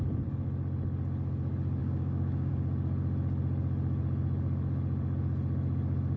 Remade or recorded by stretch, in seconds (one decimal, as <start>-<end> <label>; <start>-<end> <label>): 0.0-1.8 recorded; 1.8-2.5 remade; 2.5-6.2 recorded